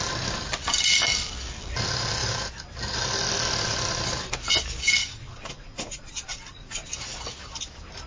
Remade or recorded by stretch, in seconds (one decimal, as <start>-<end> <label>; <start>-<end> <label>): 0.0-5.0 recorded; 5.0-6.9 remade; 6.9-8.1 recorded